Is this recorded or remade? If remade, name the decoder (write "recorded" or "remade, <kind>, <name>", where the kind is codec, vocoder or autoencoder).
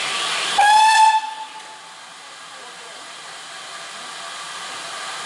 recorded